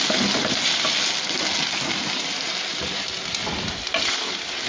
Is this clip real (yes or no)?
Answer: yes